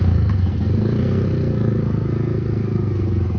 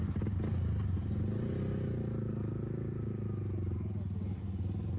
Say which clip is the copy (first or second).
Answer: first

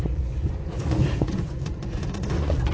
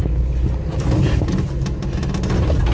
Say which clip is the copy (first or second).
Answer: first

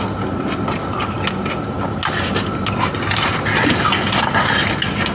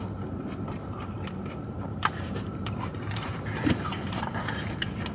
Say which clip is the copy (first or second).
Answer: second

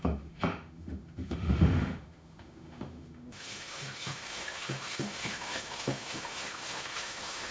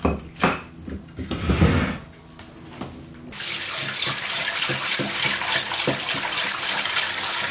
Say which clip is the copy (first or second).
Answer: first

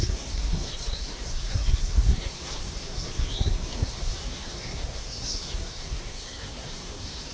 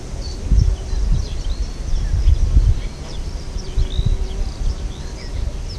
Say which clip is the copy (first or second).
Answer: first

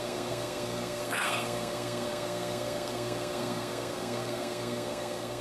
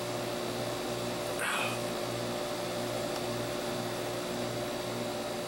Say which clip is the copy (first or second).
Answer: first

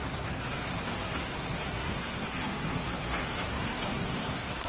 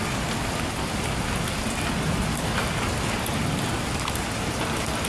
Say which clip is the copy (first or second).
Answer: first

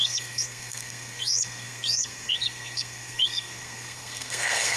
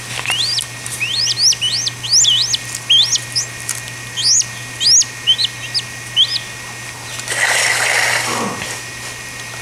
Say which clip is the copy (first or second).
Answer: first